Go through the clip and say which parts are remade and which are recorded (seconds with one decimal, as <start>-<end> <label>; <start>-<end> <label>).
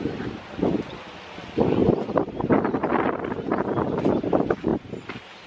0.0-5.5 recorded